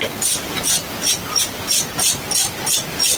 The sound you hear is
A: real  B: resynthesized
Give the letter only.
A